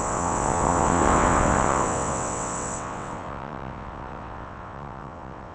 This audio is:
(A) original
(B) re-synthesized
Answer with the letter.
B